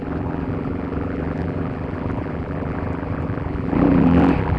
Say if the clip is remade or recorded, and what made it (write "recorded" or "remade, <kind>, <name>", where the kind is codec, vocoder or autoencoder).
remade, vocoder, BigVGAN v2